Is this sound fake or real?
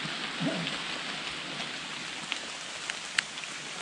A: real